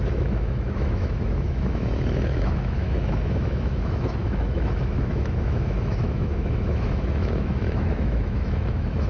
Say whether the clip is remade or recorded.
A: remade